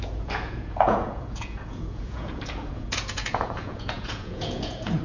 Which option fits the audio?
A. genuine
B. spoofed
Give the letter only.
B